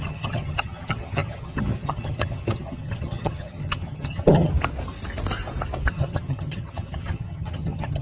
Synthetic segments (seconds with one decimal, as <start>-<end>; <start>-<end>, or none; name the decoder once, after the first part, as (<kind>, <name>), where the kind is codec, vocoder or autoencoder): 0.0-4.5 (vocoder, HiFi-GAN); 5.9-8.0